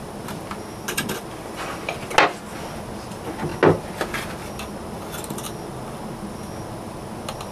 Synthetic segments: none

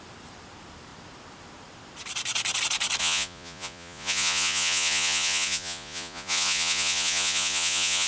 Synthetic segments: 3.0-8.1

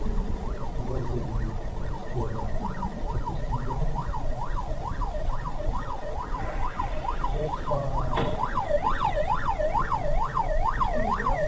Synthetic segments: 0.0-11.5

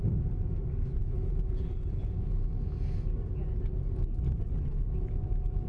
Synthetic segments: 1.0-2.4

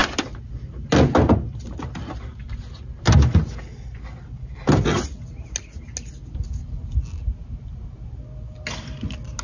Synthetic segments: none

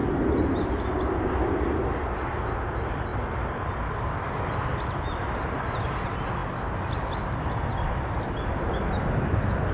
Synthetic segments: none

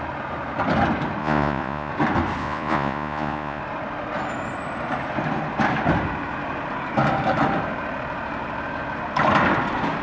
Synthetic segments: 1.2-1.9; 2.4-3.6

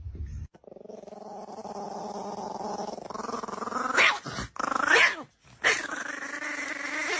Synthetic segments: none